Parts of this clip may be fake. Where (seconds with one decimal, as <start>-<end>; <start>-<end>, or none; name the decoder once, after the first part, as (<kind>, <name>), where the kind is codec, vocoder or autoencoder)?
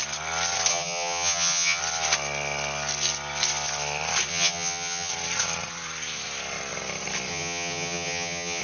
0.7-1.8 (vocoder, HiFi-GAN); 4.3-5.1; 7.3-8.6